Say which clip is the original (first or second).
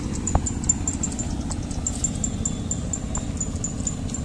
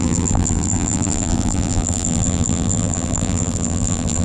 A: first